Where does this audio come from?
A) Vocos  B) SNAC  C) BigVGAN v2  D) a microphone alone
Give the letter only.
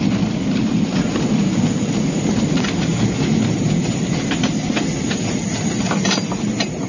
D